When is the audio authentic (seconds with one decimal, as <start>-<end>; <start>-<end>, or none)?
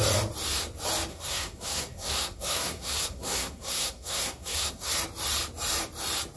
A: 0.0-1.1; 4.9-6.4